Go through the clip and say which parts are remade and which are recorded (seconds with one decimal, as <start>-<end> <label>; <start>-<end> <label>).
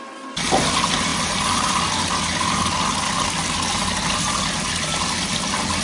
0.0-5.8 recorded